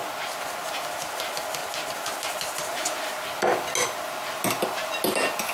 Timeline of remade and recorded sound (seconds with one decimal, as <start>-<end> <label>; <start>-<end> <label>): 0.0-5.5 recorded